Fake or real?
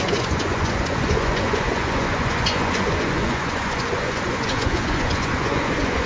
fake